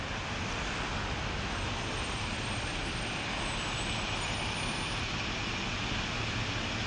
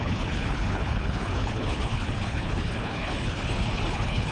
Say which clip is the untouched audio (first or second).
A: first